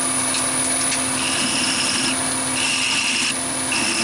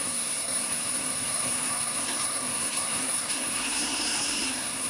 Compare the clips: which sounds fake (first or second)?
second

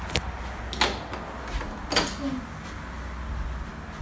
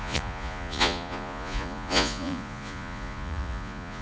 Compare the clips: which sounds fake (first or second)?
second